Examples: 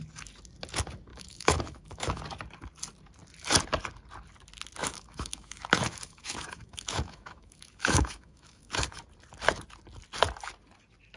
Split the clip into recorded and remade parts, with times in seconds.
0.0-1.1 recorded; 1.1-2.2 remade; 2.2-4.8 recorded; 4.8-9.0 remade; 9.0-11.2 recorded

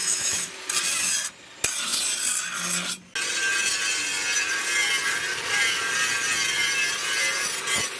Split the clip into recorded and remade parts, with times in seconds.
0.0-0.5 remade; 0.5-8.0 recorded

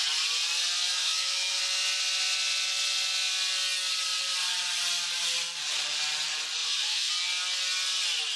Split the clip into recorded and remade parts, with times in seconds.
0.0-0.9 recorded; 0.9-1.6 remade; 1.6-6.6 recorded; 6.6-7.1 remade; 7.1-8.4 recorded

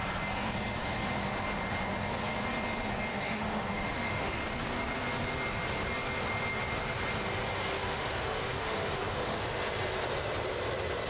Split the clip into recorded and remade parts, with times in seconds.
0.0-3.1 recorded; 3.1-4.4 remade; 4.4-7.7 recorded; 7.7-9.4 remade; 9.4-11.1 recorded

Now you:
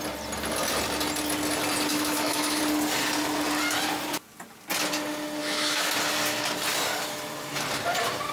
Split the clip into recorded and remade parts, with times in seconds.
0.0-1.9 recorded; 1.9-2.6 remade; 2.6-5.4 recorded; 5.4-5.9 remade; 5.9-8.3 recorded

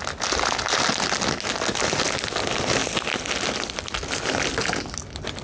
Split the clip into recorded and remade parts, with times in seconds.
0.0-5.4 recorded